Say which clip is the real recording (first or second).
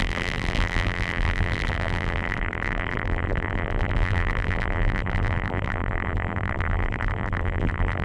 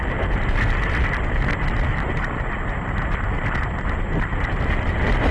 second